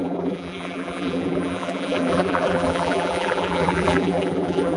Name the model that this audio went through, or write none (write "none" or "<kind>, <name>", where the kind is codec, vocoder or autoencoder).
vocoder, BigVGAN v2